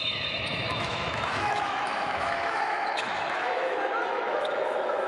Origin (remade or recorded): remade